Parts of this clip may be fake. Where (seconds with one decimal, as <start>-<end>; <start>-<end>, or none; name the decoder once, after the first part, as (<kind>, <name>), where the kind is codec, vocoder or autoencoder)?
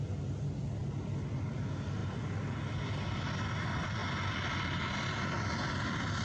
none